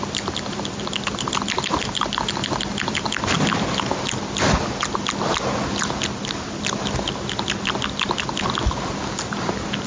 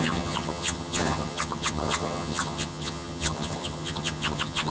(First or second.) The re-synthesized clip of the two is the second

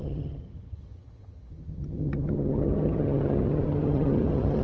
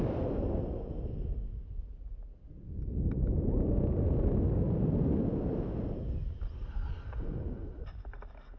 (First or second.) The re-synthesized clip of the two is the first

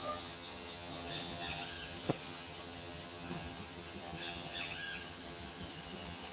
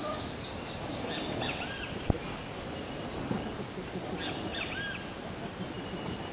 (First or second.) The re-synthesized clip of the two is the first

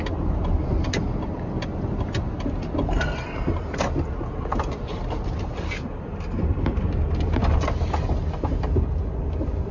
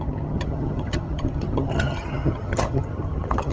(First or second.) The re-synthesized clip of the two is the second